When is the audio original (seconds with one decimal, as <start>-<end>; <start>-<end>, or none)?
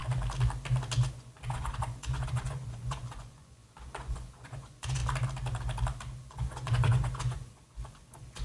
0.0-1.1; 5.0-6.3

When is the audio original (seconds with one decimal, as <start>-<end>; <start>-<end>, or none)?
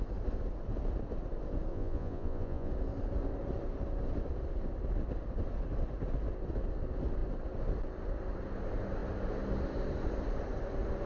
0.0-1.7; 2.7-11.1